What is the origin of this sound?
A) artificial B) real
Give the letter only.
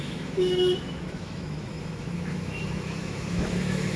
A